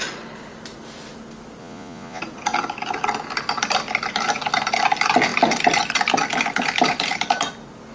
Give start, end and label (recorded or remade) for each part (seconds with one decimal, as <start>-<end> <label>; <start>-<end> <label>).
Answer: 0.0-1.6 recorded; 1.6-2.2 remade; 2.2-7.9 recorded